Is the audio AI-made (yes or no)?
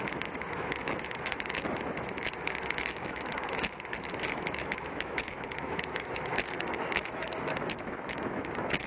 yes